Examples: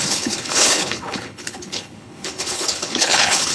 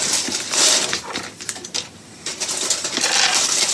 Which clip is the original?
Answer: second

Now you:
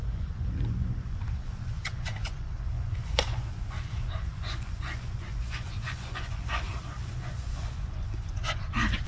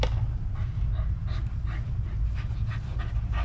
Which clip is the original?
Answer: second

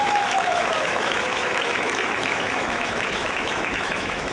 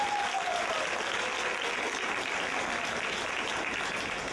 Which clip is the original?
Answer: second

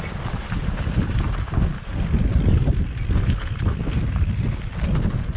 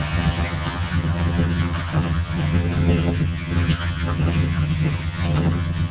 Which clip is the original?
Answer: first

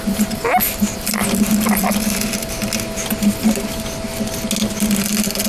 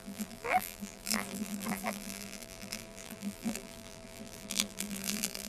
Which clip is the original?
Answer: first